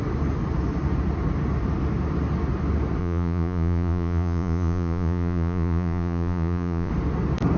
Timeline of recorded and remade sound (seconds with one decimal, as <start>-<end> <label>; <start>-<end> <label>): 0.0-3.0 recorded; 3.0-6.9 remade; 6.9-7.6 recorded